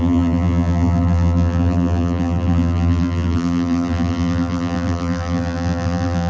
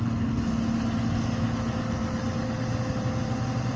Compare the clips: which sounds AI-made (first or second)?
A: first